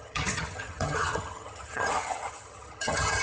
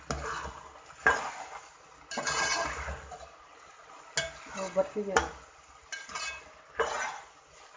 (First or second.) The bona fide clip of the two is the second